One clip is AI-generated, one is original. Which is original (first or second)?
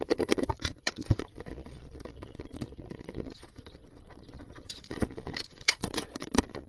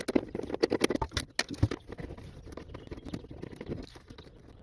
second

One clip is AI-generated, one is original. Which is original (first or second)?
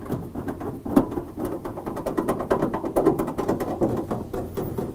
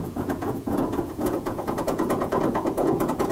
first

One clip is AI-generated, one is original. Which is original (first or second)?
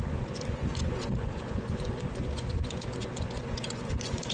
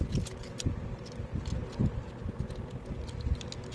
second